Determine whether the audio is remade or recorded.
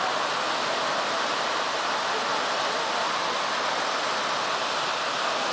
recorded